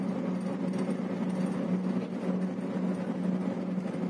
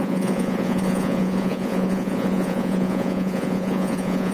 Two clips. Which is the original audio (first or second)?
first